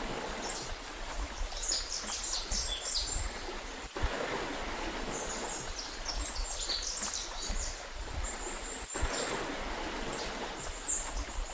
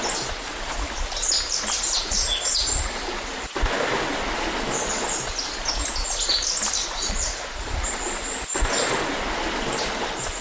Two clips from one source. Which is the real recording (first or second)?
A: second